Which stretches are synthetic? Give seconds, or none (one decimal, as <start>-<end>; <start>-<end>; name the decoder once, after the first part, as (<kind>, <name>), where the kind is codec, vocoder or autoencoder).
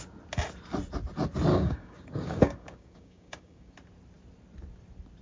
1.5-3.7 (codec, DAC)